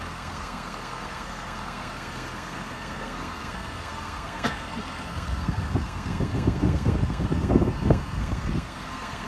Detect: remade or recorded remade